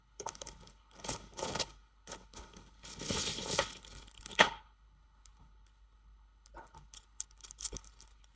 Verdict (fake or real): fake